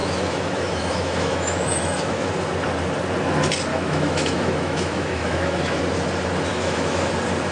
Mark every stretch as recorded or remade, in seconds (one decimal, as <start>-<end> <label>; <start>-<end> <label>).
0.0-2.3 remade; 2.3-3.7 recorded; 3.7-5.8 remade; 5.8-6.5 recorded; 6.5-7.1 remade; 7.1-7.5 recorded